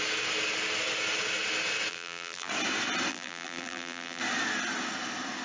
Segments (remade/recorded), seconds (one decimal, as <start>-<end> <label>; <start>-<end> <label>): 0.0-1.9 recorded; 1.9-2.5 remade; 2.5-3.1 recorded; 3.1-4.2 remade; 4.2-5.4 recorded